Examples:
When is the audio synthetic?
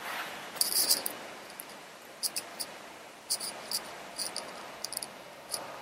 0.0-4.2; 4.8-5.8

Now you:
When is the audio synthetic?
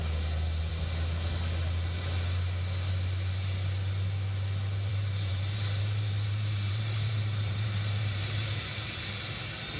4.9-9.1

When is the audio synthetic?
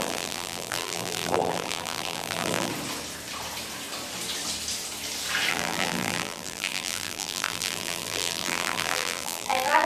0.0-2.7; 5.5-9.8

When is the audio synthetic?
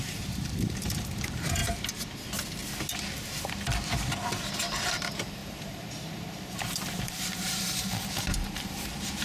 0.0-1.6; 4.6-9.2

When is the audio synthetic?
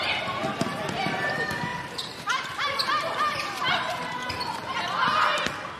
1.7-4.3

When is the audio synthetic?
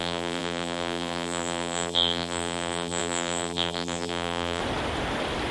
0.0-4.6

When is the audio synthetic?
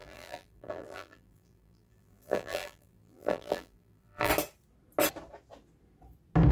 0.0-4.3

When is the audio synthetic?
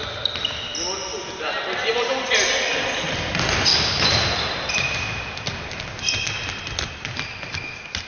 3.7-5.0